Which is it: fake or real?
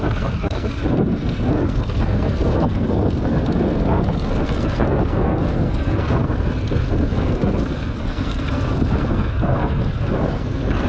fake